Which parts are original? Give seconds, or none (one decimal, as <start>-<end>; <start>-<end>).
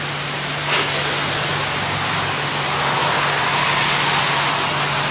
0.0-5.1